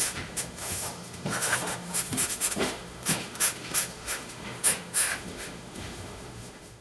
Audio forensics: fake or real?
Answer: fake